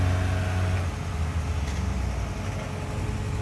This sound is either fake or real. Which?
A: real